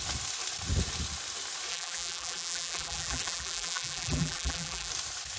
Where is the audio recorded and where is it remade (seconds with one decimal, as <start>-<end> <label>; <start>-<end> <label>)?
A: 0.0-1.7 recorded; 1.7-4.9 remade; 4.9-5.4 recorded

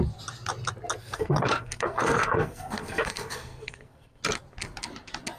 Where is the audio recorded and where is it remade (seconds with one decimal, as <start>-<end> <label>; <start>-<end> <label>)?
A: 0.0-1.0 recorded; 1.0-4.2 remade; 4.2-5.4 recorded